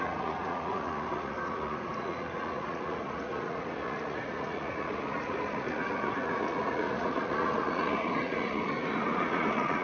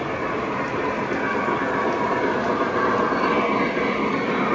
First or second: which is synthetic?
first